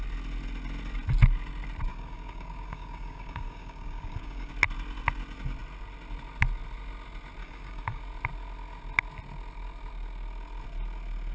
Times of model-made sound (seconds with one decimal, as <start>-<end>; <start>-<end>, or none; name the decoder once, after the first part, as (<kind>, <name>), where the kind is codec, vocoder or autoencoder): 1.9-4.5 (codec, DAC); 7.4-8.0